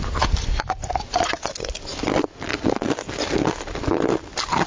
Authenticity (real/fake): real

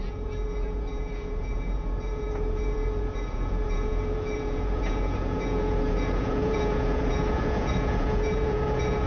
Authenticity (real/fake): fake